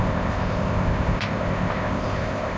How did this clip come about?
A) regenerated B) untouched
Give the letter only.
A